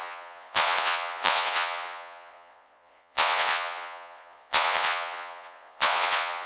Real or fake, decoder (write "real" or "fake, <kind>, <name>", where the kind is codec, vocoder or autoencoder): fake, vocoder, Vocos